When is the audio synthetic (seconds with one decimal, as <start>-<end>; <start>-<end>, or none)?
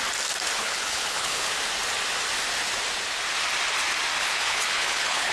0.6-1.5; 4.2-5.3